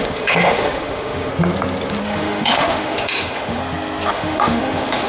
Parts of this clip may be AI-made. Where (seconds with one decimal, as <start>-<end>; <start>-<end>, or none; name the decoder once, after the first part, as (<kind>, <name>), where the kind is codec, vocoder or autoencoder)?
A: 0.0-1.3 (autoencoder, DAC-VAE); 2.0-3.6; 4.1-5.1